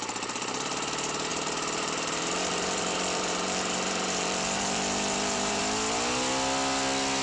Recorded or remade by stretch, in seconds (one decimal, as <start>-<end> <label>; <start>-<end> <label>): 0.0-1.3 recorded; 1.3-5.6 remade; 5.6-7.2 recorded

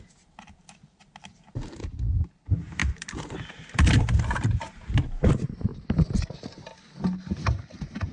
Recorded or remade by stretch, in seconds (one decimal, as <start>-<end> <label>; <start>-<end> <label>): 0.0-5.7 remade; 5.7-7.6 recorded; 7.6-8.1 remade